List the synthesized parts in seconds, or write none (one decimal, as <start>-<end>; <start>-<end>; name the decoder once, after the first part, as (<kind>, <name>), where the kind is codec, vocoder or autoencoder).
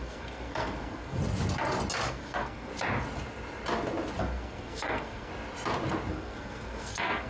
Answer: 0.0-1.2 (codec, SNAC); 2.1-2.7; 4.2-5.3; 6.1-7.3